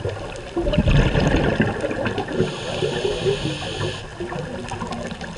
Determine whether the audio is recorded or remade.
recorded